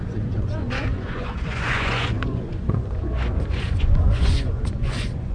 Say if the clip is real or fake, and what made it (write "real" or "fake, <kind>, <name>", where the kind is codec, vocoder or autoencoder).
fake, vocoder, Vocos